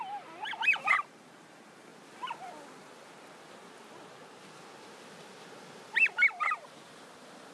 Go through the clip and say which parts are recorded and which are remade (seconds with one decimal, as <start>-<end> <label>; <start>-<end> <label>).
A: 0.0-1.9 remade; 1.9-6.4 recorded; 6.4-7.5 remade